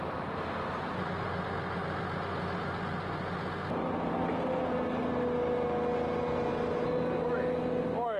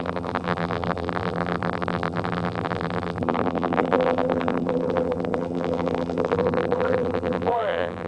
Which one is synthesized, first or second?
second